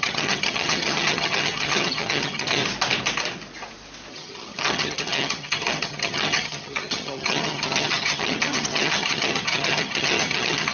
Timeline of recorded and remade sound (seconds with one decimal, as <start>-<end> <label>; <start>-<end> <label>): 0.0-2.6 remade; 2.6-4.1 recorded; 4.1-10.7 remade